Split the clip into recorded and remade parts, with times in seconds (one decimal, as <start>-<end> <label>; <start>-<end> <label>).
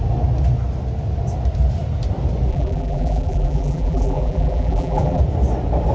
0.0-2.5 recorded; 2.5-5.2 remade; 5.2-5.9 recorded